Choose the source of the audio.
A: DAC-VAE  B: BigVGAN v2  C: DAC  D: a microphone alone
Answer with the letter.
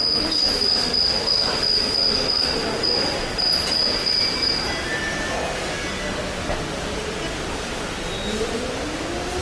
D